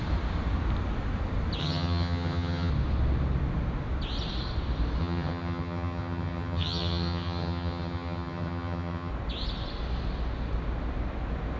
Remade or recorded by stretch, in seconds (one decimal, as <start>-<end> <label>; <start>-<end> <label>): 0.0-1.6 recorded; 1.6-2.7 remade; 2.7-5.0 recorded; 5.0-9.1 remade; 9.1-11.6 recorded